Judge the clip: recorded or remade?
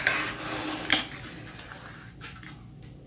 recorded